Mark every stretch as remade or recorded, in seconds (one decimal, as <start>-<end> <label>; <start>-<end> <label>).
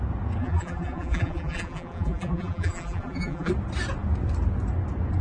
0.0-0.4 recorded; 0.4-3.5 remade; 3.5-5.2 recorded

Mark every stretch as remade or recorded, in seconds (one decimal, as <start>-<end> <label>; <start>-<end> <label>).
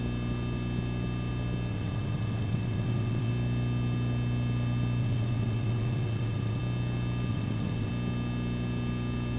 0.0-1.7 recorded; 1.7-3.3 remade; 3.3-5.0 recorded; 5.0-6.6 remade; 6.6-7.3 recorded; 7.3-7.9 remade; 7.9-9.4 recorded